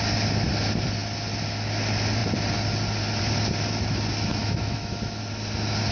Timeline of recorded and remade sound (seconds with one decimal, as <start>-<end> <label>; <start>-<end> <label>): 0.0-4.3 recorded; 4.3-5.2 remade; 5.2-5.9 recorded